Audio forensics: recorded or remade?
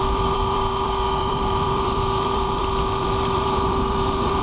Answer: remade